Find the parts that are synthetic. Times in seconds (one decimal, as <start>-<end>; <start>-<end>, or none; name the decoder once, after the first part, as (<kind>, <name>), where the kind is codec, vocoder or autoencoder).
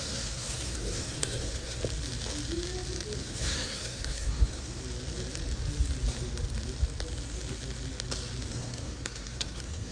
0.0-1.8 (codec, SNAC); 3.2-4.8; 8.5-9.9